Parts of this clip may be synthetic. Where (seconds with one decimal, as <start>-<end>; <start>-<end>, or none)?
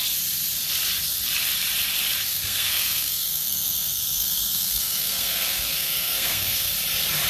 2.3-6.7